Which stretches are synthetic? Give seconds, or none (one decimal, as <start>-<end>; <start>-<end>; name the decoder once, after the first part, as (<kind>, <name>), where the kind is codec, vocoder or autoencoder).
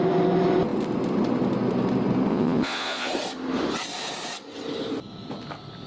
2.3-3.1 (vocoder, Vocos)